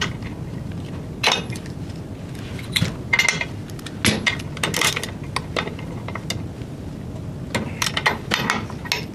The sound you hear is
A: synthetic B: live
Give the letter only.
B